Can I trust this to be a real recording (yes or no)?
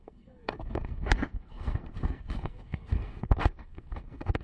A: no